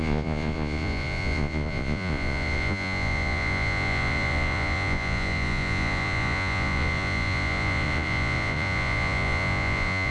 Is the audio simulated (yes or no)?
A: yes